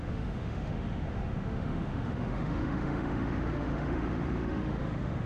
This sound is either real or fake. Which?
fake